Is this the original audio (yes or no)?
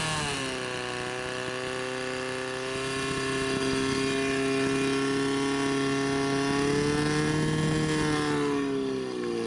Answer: yes